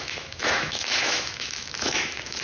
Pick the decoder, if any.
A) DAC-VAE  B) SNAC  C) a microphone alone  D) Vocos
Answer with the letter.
A